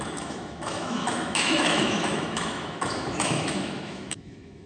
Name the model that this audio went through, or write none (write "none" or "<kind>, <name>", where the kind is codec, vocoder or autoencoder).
autoencoder, DAC-VAE